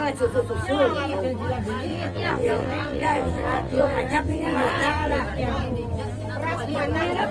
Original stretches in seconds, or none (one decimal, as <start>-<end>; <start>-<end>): 0.0-1.9; 5.2-7.3